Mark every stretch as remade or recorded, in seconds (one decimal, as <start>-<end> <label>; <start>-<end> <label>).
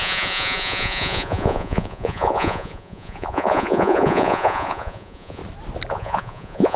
0.0-5.4 remade; 5.4-5.9 recorded; 5.9-6.8 remade